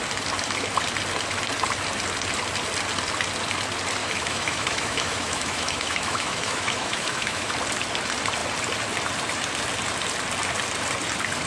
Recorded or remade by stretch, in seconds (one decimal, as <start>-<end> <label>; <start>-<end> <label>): 0.0-4.0 recorded; 4.0-7.5 remade; 7.5-11.5 recorded